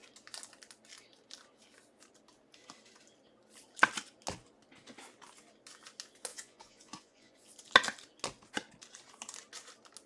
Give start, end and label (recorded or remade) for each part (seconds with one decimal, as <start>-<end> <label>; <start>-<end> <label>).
0.0-6.3 recorded; 6.3-7.5 remade; 7.5-10.1 recorded